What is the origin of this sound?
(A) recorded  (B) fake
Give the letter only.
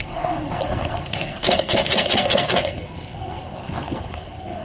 B